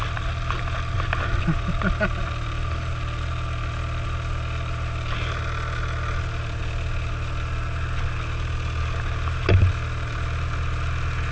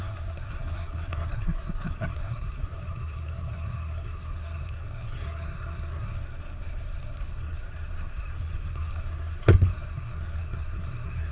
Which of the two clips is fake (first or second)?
second